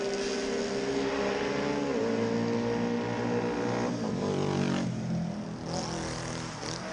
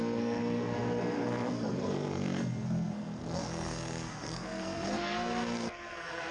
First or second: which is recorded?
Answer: first